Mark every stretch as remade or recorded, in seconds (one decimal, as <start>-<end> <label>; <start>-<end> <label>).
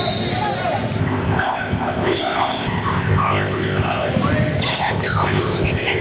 0.0-1.0 recorded; 1.0-4.1 remade; 4.1-4.7 recorded; 4.7-6.0 remade